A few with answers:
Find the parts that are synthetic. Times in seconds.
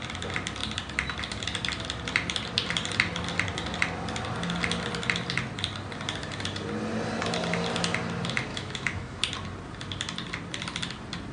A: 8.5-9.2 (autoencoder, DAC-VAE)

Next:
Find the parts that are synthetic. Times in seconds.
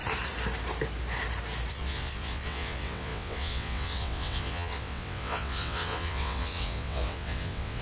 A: 1.7-7.8 (vocoder, WaveNeXt)